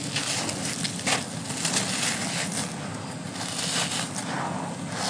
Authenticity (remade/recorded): recorded